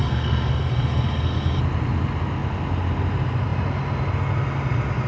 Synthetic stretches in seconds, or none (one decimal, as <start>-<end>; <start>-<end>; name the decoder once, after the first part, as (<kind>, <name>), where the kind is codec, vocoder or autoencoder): 0.0-1.6 (codec, SNAC)

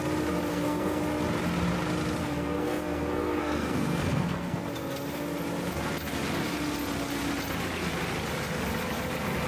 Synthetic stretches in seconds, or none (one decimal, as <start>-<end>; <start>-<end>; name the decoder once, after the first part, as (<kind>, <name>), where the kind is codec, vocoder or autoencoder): 0.5-1.0 (codec, SNAC); 2.2-4.6

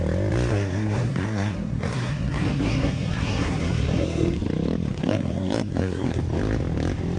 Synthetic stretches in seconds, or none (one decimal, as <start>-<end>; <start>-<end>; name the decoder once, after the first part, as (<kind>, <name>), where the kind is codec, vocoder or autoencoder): 0.5-4.4 (codec, SNAC); 4.9-6.2

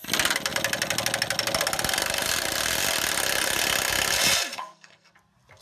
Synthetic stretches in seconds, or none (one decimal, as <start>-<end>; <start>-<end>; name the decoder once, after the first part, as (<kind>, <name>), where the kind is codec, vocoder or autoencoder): 4.5-5.1 (codec, SNAC)

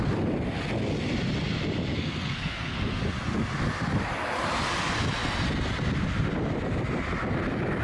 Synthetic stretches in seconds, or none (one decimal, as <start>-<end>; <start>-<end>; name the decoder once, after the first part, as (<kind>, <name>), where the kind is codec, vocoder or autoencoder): 1.9-3.0 (codec, SNAC)